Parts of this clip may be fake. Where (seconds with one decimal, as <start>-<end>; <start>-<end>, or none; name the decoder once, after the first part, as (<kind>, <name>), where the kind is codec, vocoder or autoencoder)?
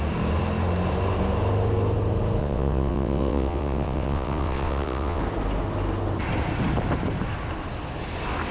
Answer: 2.4-5.2 (vocoder, WaveNeXt)